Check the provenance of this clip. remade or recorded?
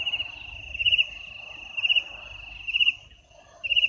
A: recorded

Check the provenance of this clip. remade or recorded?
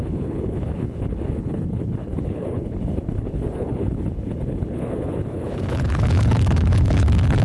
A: remade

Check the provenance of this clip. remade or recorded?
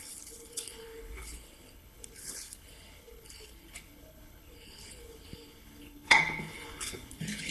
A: remade